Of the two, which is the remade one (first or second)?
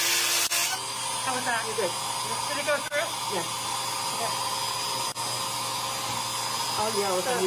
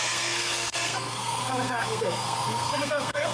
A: second